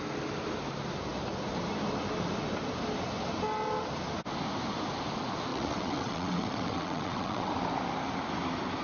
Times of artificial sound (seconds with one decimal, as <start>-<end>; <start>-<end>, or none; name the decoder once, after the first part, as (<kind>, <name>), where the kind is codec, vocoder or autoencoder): 5.5-7.5 (vocoder, WaveNeXt)